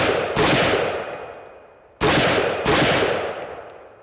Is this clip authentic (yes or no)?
yes